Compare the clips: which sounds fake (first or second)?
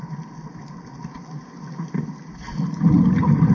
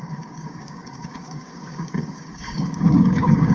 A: second